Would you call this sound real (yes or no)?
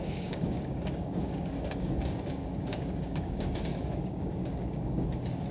no